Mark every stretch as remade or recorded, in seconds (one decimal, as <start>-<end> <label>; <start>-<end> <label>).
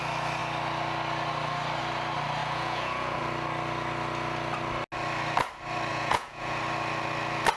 0.0-2.4 recorded; 2.4-3.2 remade; 3.2-5.9 recorded; 5.9-6.6 remade; 6.6-7.6 recorded